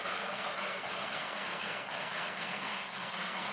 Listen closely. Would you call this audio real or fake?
fake